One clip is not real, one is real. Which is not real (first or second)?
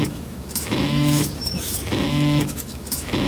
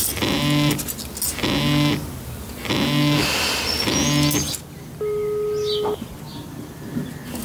first